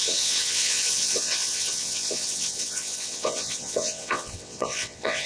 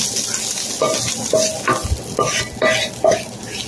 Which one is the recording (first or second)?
second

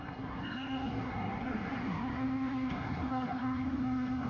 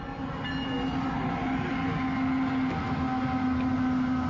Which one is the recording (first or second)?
second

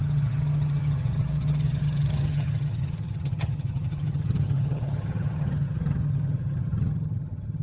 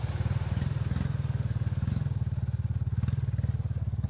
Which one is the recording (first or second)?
second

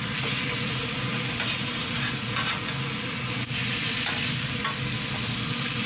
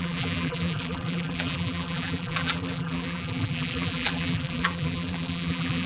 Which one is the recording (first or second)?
first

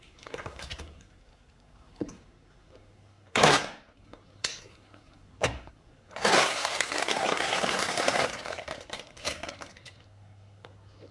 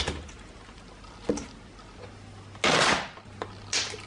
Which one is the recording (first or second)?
second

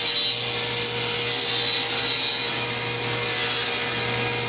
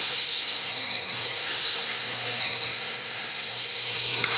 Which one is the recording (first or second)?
first